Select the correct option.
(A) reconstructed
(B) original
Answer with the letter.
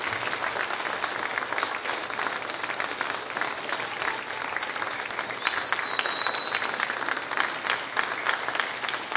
B